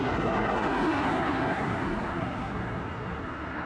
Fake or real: fake